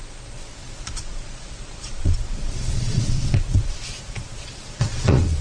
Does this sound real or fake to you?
fake